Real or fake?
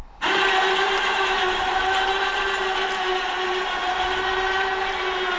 fake